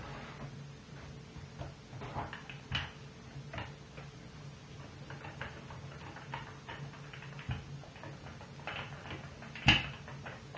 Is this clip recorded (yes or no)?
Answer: yes